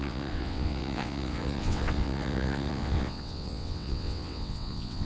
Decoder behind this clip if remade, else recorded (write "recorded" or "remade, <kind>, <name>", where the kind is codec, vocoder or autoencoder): remade, vocoder, WaveNeXt